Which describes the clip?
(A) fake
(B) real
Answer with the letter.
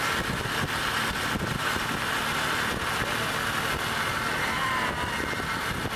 B